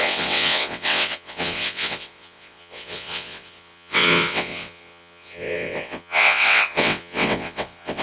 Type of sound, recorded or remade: remade